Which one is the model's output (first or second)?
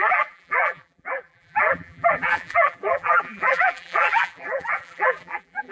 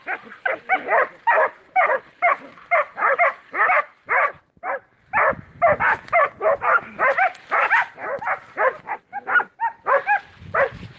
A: first